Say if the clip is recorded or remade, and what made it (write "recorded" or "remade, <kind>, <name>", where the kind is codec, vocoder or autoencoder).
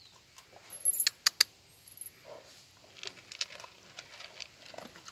recorded